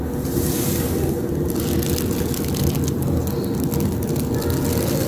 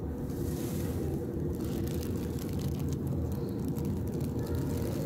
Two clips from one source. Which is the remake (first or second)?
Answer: second